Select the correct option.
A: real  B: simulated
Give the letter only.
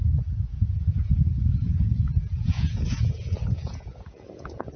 B